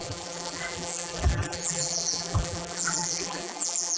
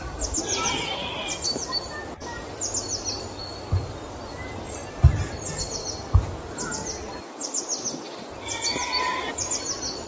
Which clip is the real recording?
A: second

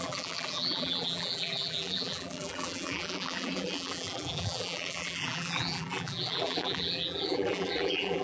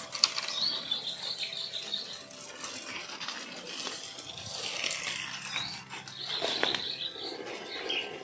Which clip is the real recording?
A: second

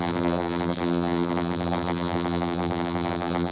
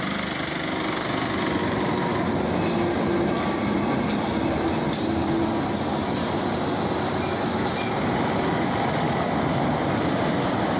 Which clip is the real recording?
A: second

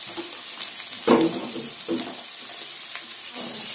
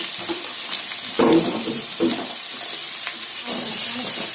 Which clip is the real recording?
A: first